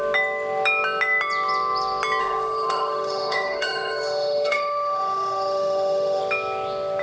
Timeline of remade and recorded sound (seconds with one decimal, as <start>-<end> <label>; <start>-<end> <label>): 0.0-2.2 recorded; 2.2-6.2 remade; 6.2-7.0 recorded